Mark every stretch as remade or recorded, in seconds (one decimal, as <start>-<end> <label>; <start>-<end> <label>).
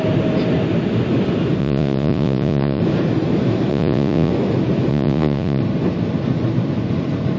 0.0-1.6 recorded; 1.6-2.8 remade; 2.8-3.7 recorded; 3.7-4.3 remade; 4.3-4.9 recorded; 4.9-5.6 remade; 5.6-7.4 recorded